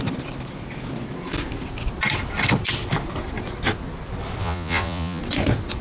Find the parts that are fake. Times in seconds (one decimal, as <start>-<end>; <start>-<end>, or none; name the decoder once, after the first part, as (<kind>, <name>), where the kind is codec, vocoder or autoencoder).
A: 4.4-5.2 (vocoder, Vocos)